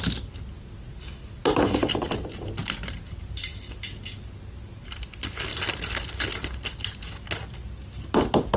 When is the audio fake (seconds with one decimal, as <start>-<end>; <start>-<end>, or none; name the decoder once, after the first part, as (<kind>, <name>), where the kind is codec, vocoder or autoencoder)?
none